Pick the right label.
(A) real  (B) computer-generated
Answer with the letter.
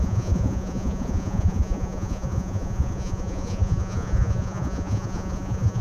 B